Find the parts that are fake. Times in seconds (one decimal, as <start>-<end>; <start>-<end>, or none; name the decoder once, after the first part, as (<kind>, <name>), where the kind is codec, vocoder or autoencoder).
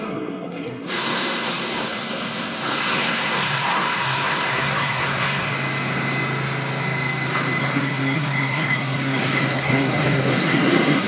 0.0-5.5 (codec, SNAC); 7.6-11.1